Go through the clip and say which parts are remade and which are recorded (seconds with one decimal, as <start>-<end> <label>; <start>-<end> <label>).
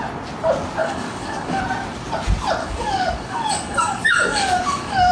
0.0-0.8 recorded; 0.8-1.6 remade; 1.6-2.6 recorded; 2.6-5.1 remade